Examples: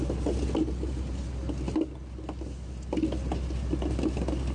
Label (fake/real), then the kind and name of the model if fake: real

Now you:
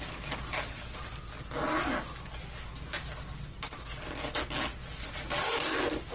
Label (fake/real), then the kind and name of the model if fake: real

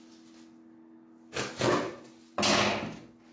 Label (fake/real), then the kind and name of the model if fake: real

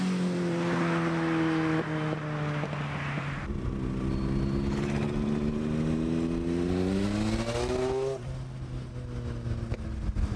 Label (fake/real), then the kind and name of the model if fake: real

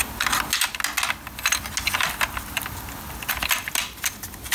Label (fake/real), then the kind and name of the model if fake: real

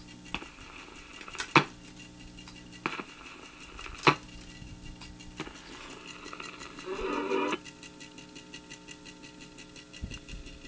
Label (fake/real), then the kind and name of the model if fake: real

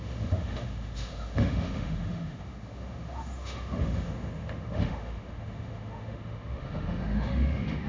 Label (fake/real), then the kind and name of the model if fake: fake, autoencoder, DAC-VAE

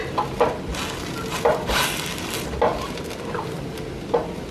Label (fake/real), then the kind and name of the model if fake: real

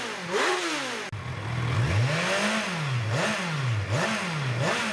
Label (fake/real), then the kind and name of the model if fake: real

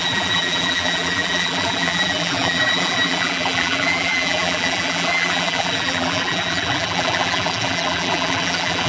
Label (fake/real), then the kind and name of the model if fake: fake, vocoder, BigVGAN v2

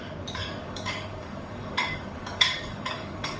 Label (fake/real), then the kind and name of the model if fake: fake, codec, DAC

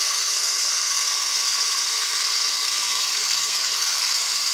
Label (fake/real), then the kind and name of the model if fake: fake, codec, SNAC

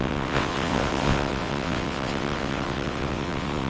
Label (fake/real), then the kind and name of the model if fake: fake, vocoder, WaveNeXt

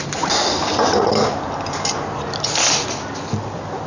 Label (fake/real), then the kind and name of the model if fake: real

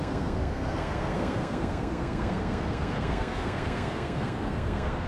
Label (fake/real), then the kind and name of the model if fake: fake, codec, SNAC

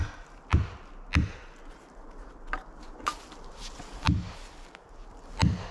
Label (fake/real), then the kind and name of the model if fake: real